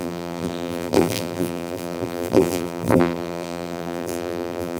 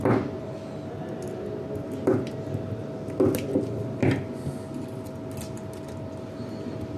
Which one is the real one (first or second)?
second